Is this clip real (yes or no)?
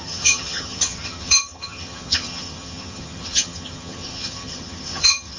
no